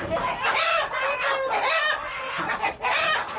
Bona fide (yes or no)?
yes